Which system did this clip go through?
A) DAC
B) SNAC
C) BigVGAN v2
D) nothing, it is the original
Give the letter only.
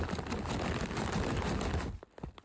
D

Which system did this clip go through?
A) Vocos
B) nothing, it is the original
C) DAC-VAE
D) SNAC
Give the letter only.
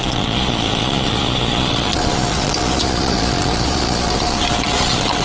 A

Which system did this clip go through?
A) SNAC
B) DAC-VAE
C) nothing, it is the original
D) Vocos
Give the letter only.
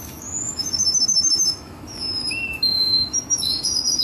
B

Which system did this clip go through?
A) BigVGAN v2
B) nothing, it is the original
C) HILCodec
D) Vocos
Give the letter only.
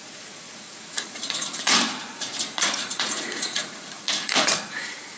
D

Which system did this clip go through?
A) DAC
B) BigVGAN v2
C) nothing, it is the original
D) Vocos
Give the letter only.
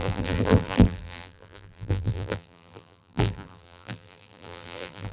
B